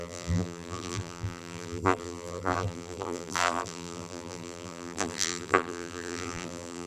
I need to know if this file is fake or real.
fake